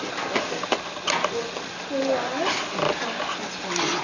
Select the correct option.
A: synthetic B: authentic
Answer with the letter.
B